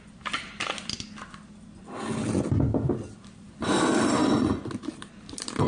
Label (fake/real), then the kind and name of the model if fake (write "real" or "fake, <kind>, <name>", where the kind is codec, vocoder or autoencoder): real